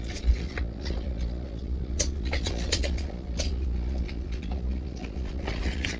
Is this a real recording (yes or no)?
no